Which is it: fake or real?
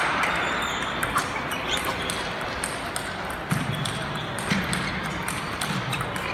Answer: real